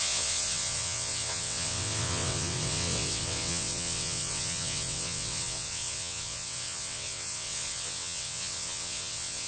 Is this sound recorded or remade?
remade